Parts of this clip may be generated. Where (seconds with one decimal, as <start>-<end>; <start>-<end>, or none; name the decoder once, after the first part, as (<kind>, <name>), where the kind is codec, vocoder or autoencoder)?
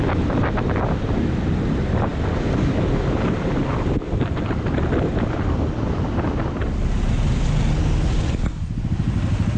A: none